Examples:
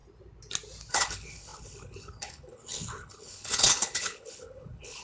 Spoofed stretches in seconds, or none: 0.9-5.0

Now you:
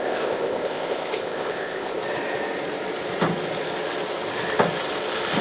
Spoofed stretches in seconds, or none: 0.0-2.0

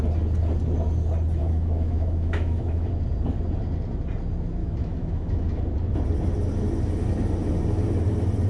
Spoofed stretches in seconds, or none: 1.4-2.9; 4.6-5.6

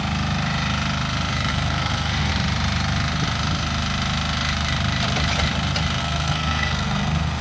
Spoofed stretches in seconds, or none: 1.5-2.3; 6.0-7.4

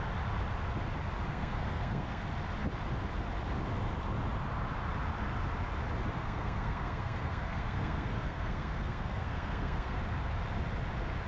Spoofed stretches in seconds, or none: 1.3-2.2; 6.2-10.0

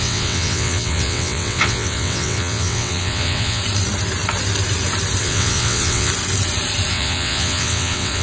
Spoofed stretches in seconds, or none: 0.0-3.6; 5.2-6.1; 6.9-8.2